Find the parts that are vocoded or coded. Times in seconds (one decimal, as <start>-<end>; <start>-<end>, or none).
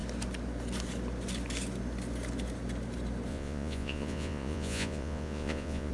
3.3-5.9